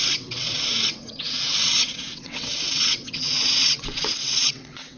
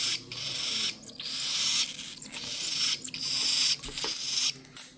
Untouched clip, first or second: second